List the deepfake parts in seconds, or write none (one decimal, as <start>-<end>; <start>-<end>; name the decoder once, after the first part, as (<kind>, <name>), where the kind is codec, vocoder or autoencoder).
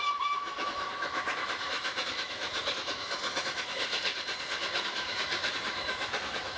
0.0-4.1 (autoencoder, DAC-VAE); 4.6-6.6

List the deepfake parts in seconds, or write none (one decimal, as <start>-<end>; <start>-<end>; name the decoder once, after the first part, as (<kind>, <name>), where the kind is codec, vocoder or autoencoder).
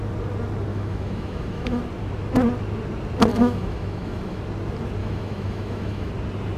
0.7-1.8 (autoencoder, DAC-VAE); 3.3-4.4; 5.0-6.1